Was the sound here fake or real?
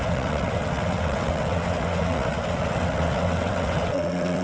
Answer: fake